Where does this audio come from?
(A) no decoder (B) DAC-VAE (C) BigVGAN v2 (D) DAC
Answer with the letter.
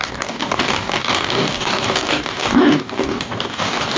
D